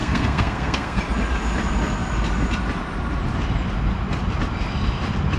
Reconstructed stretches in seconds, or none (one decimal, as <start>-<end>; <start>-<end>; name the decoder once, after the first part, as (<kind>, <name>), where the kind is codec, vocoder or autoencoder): 0.0-1.0 (codec, SNAC)

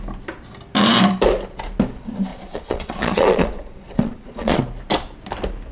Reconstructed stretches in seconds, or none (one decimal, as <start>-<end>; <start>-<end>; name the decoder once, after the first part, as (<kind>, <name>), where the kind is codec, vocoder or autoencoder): 2.3-4.6 (vocoder, Vocos)